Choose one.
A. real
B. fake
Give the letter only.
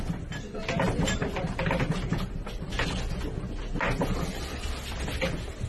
A